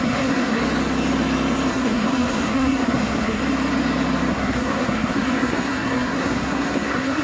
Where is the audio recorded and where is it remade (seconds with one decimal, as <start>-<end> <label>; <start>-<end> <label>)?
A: 0.0-0.6 remade; 0.6-1.7 recorded; 1.7-3.4 remade; 3.4-4.3 recorded; 4.3-7.2 remade